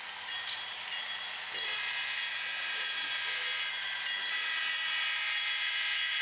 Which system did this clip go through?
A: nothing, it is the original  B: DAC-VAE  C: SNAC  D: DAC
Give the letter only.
A